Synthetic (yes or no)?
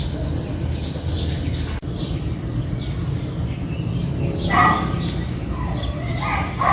no